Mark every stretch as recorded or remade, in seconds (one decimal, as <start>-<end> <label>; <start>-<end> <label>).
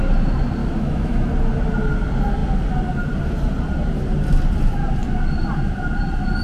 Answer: 0.0-0.6 recorded; 0.6-1.3 remade; 1.3-6.4 recorded